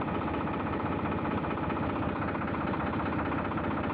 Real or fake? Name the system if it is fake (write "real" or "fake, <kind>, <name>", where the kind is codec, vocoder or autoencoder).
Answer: real